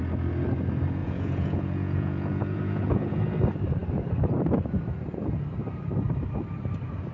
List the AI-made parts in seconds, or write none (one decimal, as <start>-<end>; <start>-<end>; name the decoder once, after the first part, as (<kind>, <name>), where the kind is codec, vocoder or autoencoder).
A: 1.0-3.2 (vocoder, Vocos)